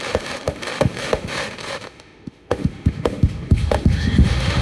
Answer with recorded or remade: remade